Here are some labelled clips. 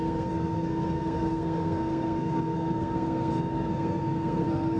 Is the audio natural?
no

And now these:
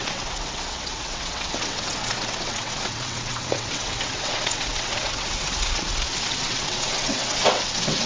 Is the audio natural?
no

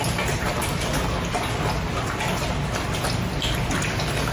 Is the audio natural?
yes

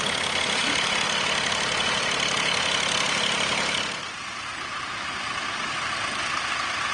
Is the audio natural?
yes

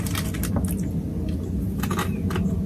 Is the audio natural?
yes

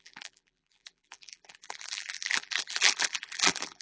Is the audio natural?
no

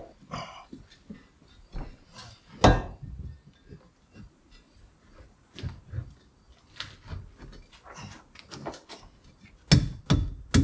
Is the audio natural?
yes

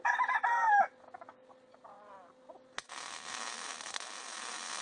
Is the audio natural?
yes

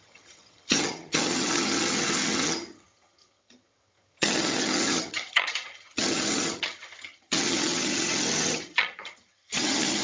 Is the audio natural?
no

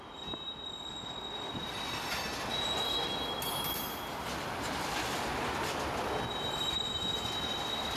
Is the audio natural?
yes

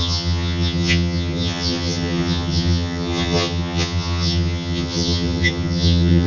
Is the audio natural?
no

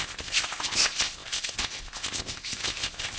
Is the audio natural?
no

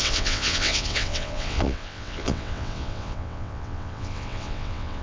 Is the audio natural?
no